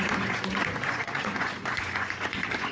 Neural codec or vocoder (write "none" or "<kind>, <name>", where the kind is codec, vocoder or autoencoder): vocoder, Vocos